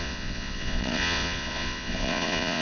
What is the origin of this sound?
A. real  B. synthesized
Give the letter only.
B